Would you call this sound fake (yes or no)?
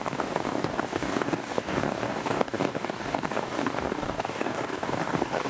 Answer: yes